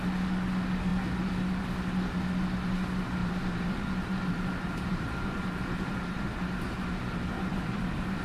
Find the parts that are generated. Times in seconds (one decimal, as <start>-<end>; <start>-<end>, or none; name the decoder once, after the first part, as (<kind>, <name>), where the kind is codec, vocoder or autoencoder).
3.2-8.2 (vocoder, BigVGAN v2)

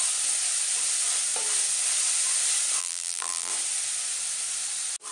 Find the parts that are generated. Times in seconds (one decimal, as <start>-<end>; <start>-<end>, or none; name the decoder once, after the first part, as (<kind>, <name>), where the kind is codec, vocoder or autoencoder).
2.8-3.5 (vocoder, BigVGAN v2)

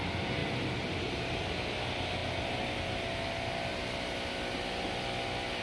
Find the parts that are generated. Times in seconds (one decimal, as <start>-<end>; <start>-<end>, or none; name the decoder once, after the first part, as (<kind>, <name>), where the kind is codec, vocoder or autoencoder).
none